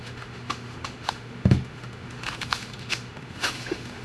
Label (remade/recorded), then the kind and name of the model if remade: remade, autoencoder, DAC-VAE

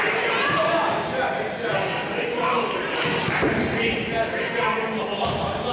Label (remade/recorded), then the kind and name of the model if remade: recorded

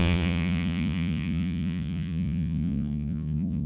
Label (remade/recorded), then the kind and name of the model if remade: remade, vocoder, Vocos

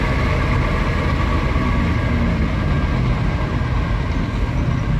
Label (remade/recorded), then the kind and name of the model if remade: recorded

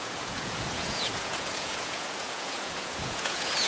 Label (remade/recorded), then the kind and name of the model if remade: remade, vocoder, Vocos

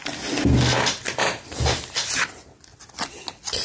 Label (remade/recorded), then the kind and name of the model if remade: recorded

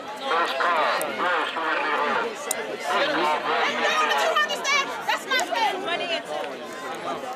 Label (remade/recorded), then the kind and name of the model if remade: recorded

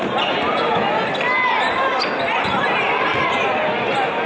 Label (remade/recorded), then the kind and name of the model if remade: recorded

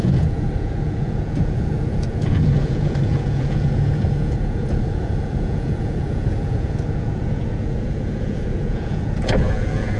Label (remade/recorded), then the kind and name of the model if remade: remade, vocoder, Vocos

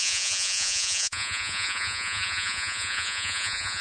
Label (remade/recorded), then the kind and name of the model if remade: remade, vocoder, Vocos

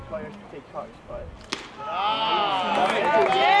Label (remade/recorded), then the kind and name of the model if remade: recorded